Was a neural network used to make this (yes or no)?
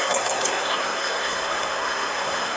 yes